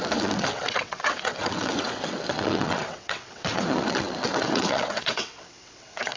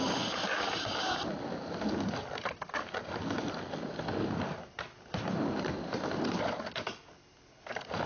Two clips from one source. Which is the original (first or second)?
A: second